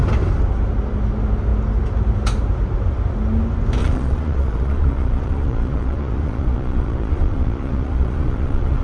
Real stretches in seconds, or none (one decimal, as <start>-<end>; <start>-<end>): 0.0-3.8